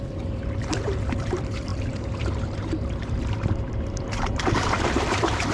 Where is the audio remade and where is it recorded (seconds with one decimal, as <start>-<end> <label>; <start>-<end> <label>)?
0.0-5.5 remade